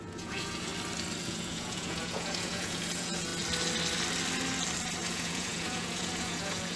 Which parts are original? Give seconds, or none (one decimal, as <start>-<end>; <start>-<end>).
0.7-1.3; 3.3-5.0